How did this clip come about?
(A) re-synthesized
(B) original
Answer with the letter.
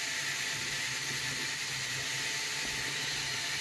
B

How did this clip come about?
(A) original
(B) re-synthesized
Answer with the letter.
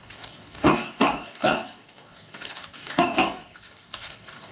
B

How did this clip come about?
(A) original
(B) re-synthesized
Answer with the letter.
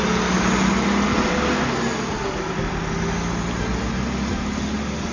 A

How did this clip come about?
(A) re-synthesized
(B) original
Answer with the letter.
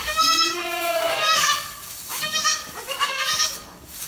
A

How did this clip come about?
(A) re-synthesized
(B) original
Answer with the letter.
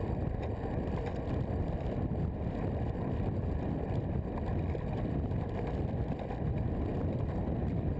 B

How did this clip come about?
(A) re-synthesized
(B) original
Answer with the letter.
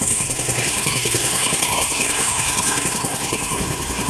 A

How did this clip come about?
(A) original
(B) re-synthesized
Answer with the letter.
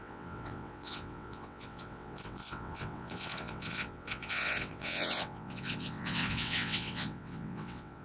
B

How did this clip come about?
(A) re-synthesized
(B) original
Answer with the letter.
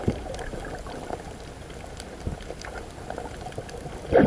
B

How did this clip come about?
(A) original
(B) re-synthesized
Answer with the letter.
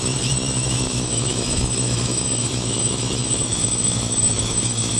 B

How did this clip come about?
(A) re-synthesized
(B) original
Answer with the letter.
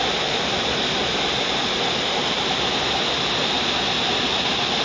B